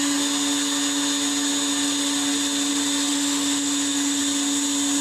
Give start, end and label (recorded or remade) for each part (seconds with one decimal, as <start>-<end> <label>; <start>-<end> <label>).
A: 0.0-3.1 recorded; 3.1-4.2 remade; 4.2-5.0 recorded